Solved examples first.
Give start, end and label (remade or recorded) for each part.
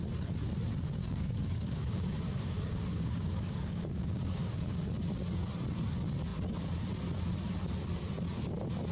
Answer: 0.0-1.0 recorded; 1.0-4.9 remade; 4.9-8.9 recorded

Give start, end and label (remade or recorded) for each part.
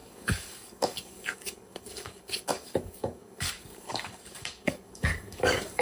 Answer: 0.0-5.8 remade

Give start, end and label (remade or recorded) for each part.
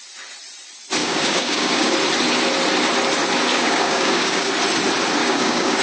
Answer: 0.0-1.0 recorded; 1.0-1.9 remade; 1.9-3.5 recorded; 3.5-4.5 remade; 4.5-5.2 recorded; 5.2-5.8 remade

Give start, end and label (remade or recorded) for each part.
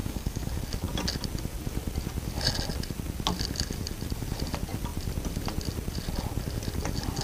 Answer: 0.0-0.6 remade; 0.6-7.2 recorded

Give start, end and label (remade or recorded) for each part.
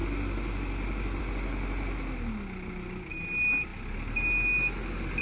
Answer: 0.0-5.2 recorded